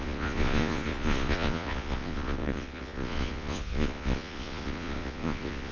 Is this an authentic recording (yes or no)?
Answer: no